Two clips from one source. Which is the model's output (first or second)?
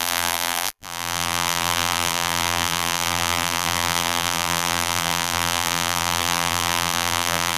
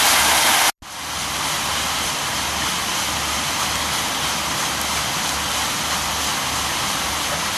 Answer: first